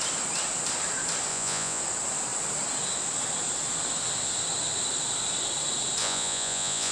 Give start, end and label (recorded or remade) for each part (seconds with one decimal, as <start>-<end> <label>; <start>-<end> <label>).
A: 0.0-1.3 recorded; 1.3-1.8 remade; 1.8-6.0 recorded; 6.0-6.9 remade